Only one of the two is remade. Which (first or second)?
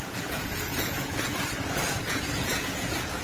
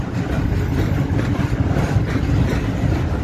first